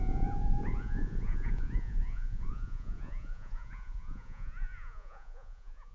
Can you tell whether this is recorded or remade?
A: remade